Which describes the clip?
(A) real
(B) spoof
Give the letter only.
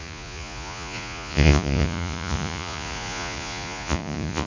B